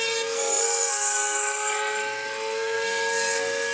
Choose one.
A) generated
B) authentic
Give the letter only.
A